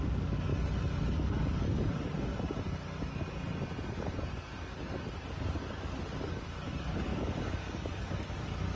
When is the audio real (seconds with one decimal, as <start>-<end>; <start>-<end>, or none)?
0.5-1.0; 2.3-6.2